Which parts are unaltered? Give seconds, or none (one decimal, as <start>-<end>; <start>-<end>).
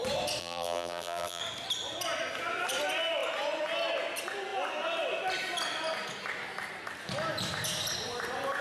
0.0-0.4; 1.4-8.6